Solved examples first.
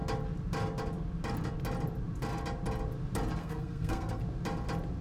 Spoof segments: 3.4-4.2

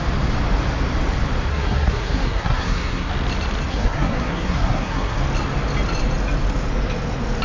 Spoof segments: 1.5-3.1; 3.7-5.2

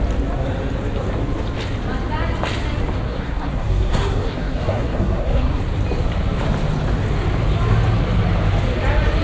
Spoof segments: 3.1-5.6